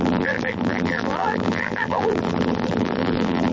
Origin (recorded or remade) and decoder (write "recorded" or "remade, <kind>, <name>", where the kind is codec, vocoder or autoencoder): remade, vocoder, BigVGAN v2